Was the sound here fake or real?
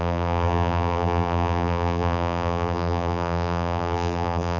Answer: fake